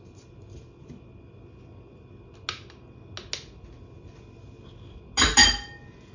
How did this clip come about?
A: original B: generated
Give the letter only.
A